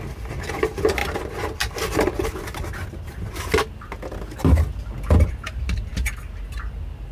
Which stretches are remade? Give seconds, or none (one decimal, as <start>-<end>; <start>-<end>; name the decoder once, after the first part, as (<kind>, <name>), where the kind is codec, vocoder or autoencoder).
none